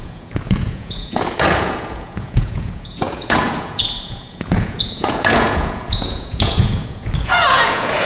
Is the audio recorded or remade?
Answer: remade